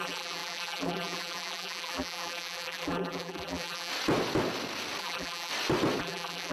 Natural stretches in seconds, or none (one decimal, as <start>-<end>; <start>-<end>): 3.9-5.0; 5.5-6.0